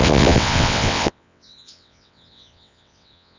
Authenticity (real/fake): fake